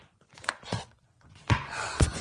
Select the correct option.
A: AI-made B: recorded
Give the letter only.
A